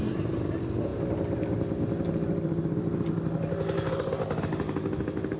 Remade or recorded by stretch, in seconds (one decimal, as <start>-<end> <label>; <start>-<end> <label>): 0.0-5.4 recorded